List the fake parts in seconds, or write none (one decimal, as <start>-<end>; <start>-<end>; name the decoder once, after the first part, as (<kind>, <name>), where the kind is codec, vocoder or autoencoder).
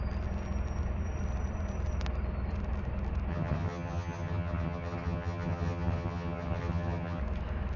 3.3-7.2 (vocoder, HiFi-GAN)